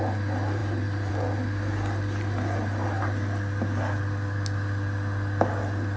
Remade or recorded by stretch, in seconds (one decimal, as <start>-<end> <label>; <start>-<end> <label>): 0.0-6.0 recorded